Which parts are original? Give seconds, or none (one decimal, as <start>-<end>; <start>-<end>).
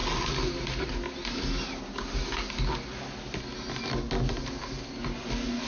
0.0-5.7